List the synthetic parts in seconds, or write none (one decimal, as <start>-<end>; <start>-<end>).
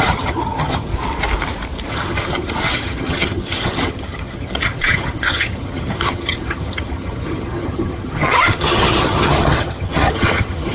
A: 0.0-0.9; 1.9-10.7